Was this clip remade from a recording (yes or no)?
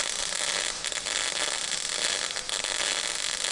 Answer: no